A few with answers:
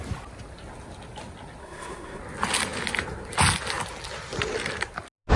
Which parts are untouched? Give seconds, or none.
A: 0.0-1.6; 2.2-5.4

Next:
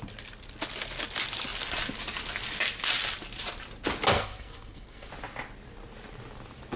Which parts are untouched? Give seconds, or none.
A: 0.0-4.1; 5.1-6.8

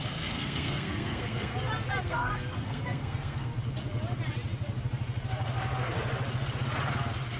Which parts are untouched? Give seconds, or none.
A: 1.5-2.0; 3.5-7.4

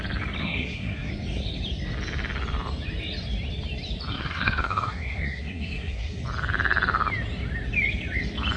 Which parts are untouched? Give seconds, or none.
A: 0.0-0.4; 1.1-4.1; 6.2-8.6

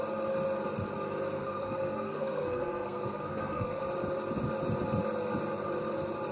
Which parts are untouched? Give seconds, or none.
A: 0.0-1.4; 3.8-6.3

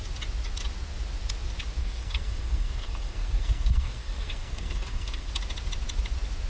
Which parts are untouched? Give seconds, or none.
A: 0.0-1.8; 5.3-6.5

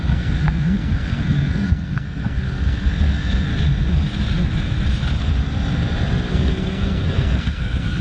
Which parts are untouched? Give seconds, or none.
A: 3.5-6.3

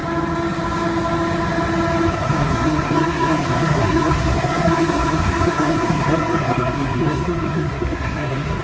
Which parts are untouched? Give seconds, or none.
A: 0.0-2.1